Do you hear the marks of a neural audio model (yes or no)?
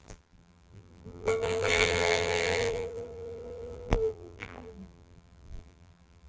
yes